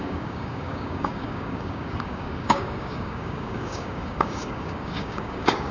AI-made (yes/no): yes